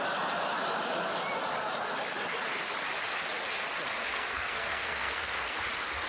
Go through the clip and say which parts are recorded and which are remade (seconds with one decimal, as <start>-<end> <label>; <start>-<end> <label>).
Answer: 0.0-4.0 recorded; 4.0-5.6 remade; 5.6-6.1 recorded